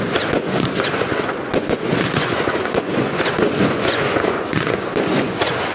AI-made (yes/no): yes